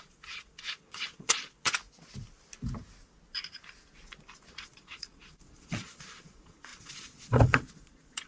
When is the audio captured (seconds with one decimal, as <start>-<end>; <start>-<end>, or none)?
1.8-4.5